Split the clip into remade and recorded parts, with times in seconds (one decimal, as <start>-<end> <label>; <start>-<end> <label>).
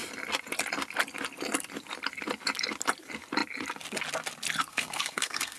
0.0-4.7 recorded; 4.7-5.6 remade